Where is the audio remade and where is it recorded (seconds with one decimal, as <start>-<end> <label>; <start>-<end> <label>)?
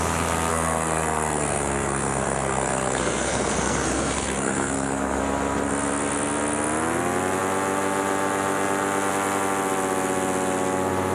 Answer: 0.0-0.5 recorded; 0.5-5.2 remade; 5.2-11.1 recorded